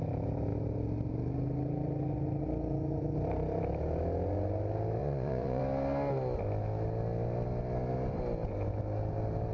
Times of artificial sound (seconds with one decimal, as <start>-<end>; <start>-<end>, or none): 5.0-5.6